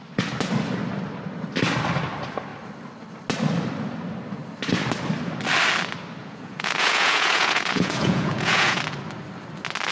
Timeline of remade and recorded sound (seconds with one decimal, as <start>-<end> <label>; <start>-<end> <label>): 0.0-6.2 recorded; 6.2-8.8 remade; 8.8-9.9 recorded